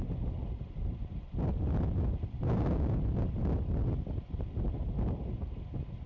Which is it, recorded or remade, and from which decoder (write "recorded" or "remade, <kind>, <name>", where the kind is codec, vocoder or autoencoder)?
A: recorded